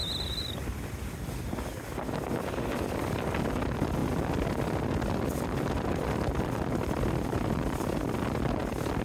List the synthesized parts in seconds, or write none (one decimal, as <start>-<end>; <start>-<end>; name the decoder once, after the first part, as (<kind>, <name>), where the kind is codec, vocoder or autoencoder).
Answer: none